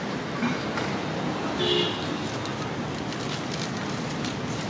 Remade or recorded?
recorded